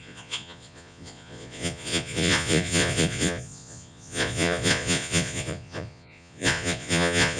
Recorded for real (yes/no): no